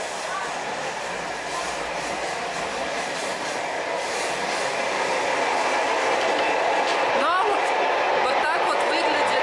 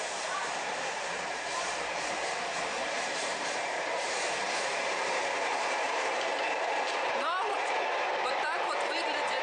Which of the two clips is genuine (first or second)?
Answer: first